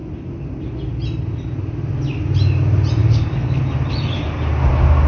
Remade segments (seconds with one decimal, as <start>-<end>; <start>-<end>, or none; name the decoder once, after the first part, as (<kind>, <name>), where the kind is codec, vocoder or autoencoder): 3.0-3.6 (codec, DAC)